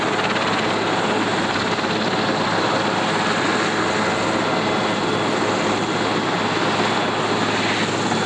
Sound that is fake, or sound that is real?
real